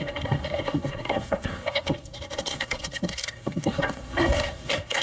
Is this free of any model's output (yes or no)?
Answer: no